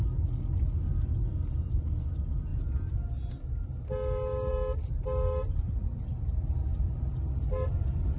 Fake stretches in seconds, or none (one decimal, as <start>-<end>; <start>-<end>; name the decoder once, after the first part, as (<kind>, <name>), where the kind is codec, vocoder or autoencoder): none